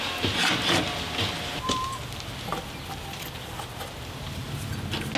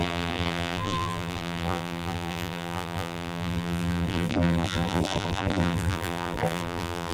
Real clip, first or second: first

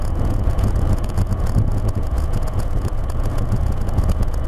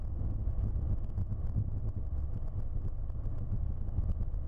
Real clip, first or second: second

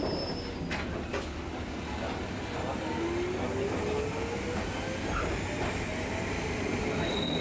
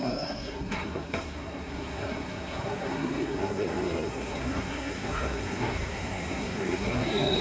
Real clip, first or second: first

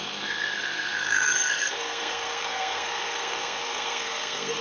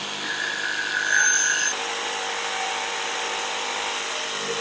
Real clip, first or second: second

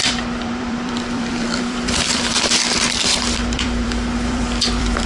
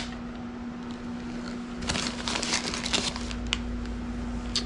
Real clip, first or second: second